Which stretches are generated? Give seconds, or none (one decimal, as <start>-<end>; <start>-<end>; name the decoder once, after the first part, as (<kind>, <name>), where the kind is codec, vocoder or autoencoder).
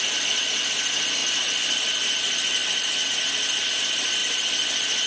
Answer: none